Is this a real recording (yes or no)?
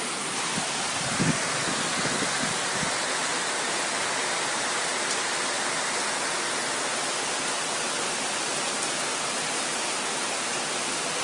yes